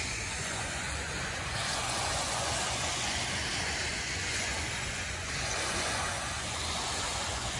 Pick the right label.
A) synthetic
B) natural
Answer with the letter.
A